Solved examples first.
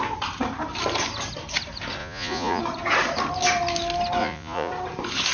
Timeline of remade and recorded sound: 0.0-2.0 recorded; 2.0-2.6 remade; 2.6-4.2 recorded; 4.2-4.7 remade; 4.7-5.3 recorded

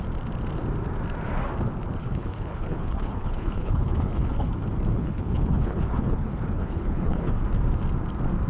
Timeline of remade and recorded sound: 0.0-2.0 recorded; 2.0-4.5 remade; 4.5-5.0 recorded; 5.0-7.3 remade; 7.3-8.5 recorded

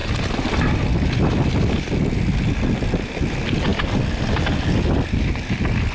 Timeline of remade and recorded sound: 0.0-5.9 recorded

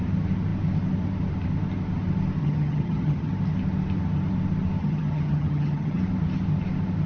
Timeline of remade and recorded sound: 0.0-2.4 recorded; 2.4-3.3 remade; 3.3-4.8 recorded; 4.8-6.0 remade; 6.0-7.1 recorded

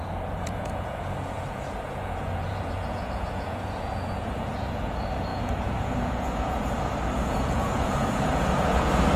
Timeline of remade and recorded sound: 0.0-9.2 remade